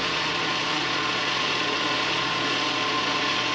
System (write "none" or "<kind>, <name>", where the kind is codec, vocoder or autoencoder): vocoder, Vocos